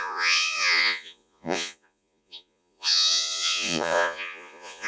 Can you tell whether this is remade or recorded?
remade